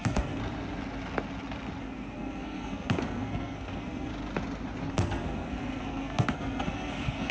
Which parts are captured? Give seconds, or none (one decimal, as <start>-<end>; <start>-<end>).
0.4-1.8; 4.1-4.9